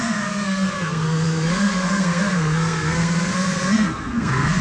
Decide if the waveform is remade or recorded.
remade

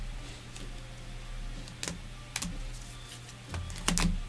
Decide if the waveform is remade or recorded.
recorded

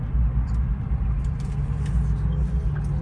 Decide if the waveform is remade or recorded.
recorded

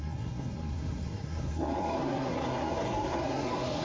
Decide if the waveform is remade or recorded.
remade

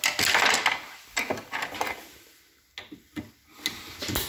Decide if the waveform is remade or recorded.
recorded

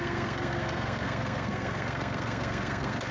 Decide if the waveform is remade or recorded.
remade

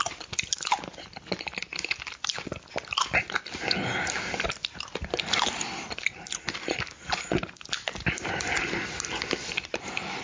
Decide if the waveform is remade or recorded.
recorded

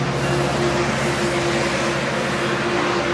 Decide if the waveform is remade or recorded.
recorded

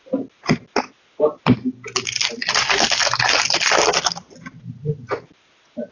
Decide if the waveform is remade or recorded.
recorded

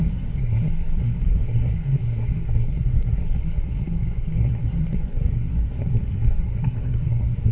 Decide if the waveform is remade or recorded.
remade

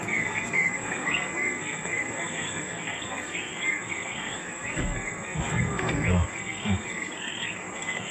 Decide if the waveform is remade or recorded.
remade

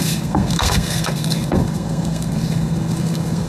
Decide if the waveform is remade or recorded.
remade